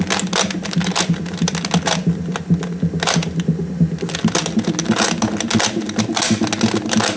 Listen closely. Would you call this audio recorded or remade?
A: recorded